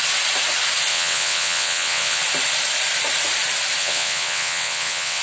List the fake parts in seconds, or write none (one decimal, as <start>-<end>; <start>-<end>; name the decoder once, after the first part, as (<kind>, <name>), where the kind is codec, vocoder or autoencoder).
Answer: 0.9-2.2 (vocoder, WaveNeXt); 3.8-5.2